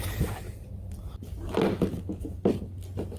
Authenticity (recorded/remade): recorded